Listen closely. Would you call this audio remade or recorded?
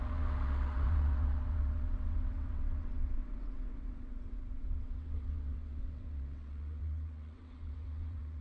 remade